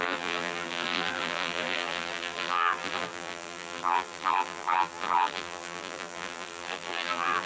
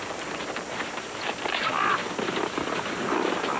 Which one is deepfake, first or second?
first